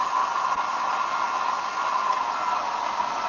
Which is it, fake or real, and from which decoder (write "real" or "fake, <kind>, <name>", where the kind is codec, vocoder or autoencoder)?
real